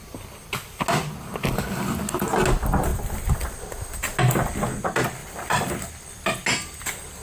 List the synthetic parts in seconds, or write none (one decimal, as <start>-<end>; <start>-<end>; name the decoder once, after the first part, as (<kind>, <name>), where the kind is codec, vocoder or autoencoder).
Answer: 2.9-3.5 (vocoder, BigVGAN v2); 5.2-5.9